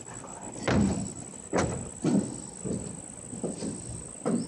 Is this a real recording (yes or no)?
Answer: yes